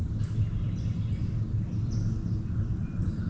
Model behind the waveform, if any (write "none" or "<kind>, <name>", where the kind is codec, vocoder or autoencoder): none